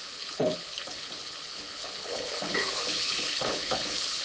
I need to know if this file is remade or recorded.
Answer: remade